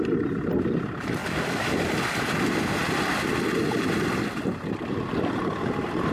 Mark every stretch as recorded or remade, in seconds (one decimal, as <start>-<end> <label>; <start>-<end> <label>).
0.0-1.2 recorded; 1.2-1.9 remade; 1.9-6.1 recorded

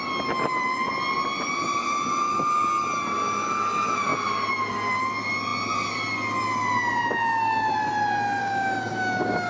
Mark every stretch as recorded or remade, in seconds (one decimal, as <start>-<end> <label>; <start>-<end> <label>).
0.0-8.4 recorded; 8.4-9.5 remade